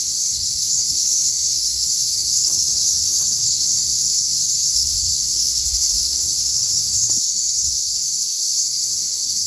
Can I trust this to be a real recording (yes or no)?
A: no